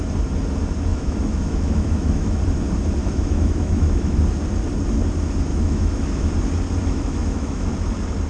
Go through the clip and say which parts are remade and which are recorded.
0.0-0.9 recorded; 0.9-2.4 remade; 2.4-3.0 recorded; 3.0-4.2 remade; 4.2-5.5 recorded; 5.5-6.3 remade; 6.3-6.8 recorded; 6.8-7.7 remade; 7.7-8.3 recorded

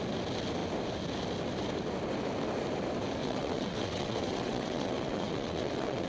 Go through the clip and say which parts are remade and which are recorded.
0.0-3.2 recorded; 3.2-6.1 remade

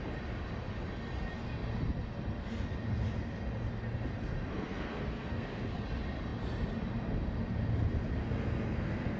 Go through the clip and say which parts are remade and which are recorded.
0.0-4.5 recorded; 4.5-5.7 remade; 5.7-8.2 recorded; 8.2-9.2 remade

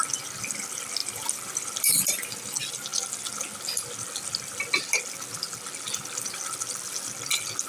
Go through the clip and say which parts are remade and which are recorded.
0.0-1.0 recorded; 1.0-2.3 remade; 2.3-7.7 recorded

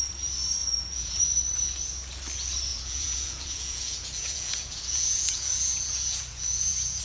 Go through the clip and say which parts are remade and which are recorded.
0.0-0.6 recorded; 0.6-1.2 remade; 1.2-2.7 recorded; 2.7-7.0 remade

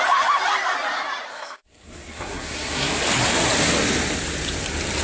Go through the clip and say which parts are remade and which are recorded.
0.0-1.3 recorded; 1.3-2.9 remade; 2.9-5.0 recorded

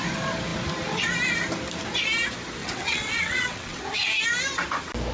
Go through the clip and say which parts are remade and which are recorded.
0.0-2.6 recorded; 2.6-3.8 remade; 3.8-5.1 recorded

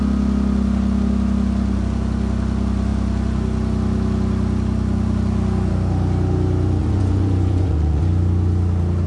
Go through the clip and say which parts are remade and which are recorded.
0.0-6.8 recorded; 6.8-8.0 remade; 8.0-9.1 recorded